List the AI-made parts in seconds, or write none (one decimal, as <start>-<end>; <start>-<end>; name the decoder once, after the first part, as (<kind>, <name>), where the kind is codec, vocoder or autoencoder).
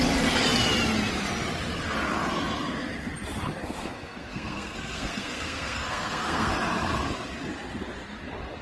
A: 3.6-6.5 (codec, SNAC)